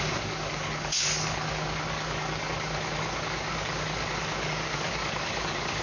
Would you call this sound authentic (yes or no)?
no